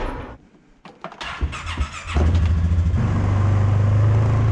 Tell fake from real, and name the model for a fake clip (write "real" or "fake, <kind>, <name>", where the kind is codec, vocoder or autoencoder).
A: real